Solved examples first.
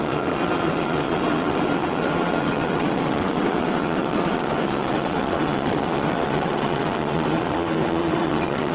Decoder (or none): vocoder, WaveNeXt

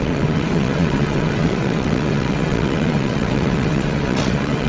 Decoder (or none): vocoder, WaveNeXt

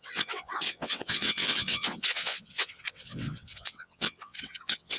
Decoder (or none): vocoder, WaveNeXt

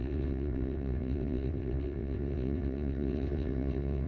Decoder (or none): vocoder, WaveNeXt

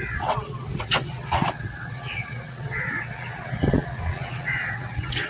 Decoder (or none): vocoder, WaveNeXt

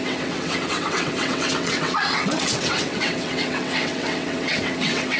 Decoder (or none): vocoder, WaveNeXt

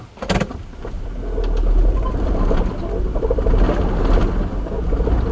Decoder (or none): none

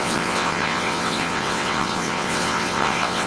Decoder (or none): vocoder, WaveNeXt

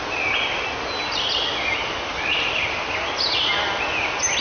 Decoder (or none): none